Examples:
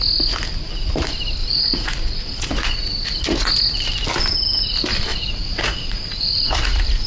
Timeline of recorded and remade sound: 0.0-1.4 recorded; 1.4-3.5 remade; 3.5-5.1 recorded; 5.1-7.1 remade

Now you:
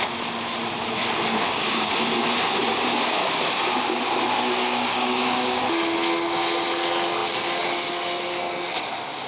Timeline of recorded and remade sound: 0.0-1.0 recorded; 1.0-1.9 remade; 1.9-4.6 recorded; 4.6-5.6 remade; 5.6-9.3 recorded

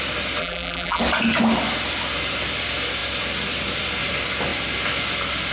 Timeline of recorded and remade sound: 0.0-0.4 recorded; 0.4-1.0 remade; 1.0-5.5 recorded

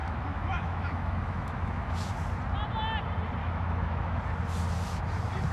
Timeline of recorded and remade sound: 0.0-2.1 remade; 2.1-3.4 recorded; 3.4-4.2 remade; 4.2-5.5 recorded

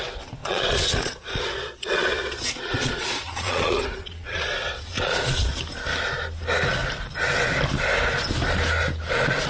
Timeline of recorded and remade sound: 0.0-0.4 recorded; 0.4-5.6 remade; 5.6-9.5 recorded

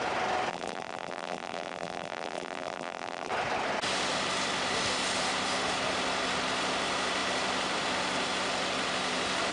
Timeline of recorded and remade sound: 0.0-0.5 recorded; 0.5-3.3 remade; 3.3-9.5 recorded

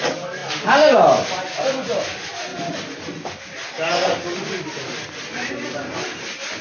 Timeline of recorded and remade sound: 0.0-6.6 recorded

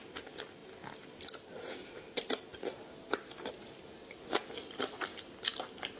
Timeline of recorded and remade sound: 0.0-6.0 recorded